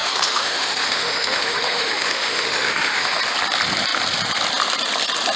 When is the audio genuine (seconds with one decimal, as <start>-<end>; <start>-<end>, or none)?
3.2-5.4